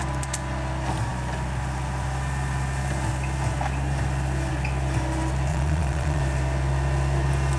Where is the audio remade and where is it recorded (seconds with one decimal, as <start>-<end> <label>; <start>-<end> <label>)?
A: 0.0-5.5 recorded; 5.5-6.2 remade; 6.2-7.6 recorded